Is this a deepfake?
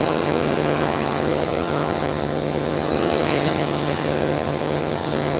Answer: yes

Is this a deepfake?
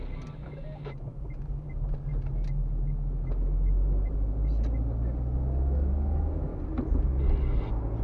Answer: no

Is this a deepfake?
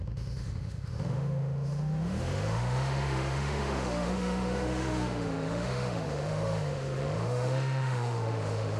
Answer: yes